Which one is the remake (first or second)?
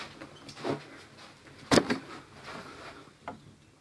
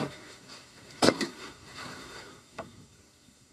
second